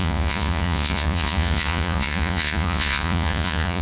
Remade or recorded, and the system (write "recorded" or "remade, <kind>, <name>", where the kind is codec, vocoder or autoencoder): remade, vocoder, Vocos